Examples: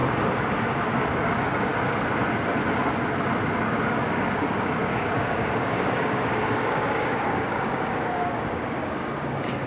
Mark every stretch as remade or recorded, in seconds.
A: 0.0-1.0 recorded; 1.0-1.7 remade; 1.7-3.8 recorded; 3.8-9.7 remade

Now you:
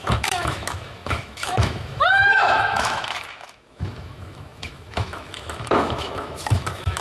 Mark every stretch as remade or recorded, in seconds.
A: 0.0-7.0 remade

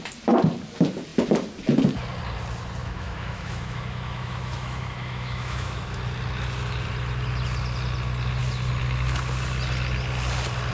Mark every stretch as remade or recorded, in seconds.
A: 0.0-2.8 recorded; 2.8-6.0 remade; 6.0-10.7 recorded

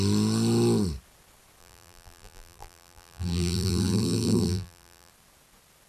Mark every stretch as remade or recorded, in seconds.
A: 0.0-1.6 recorded; 1.6-5.1 remade; 5.1-5.9 recorded

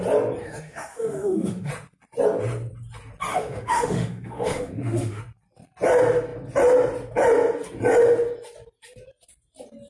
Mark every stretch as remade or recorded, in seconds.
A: 0.0-0.4 recorded; 0.4-1.7 remade; 1.7-3.3 recorded; 3.3-5.2 remade; 5.2-9.9 recorded

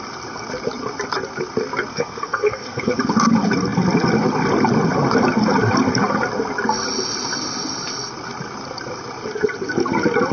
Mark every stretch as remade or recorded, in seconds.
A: 0.0-1.9 recorded; 1.9-3.0 remade; 3.0-10.3 recorded

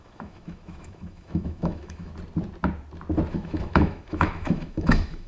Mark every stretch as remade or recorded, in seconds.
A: 0.0-2.1 remade; 2.1-3.3 recorded; 3.3-5.3 remade

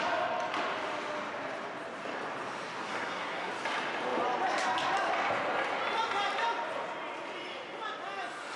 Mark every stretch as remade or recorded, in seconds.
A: 0.0-2.8 recorded; 2.8-3.5 remade; 3.5-8.6 recorded